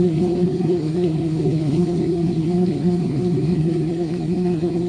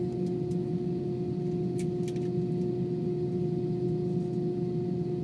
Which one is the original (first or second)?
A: second